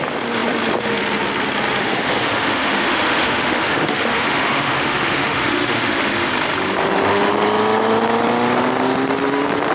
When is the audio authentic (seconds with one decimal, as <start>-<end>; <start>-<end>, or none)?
0.0-1.9; 6.3-6.8; 7.3-9.7